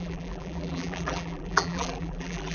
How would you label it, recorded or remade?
remade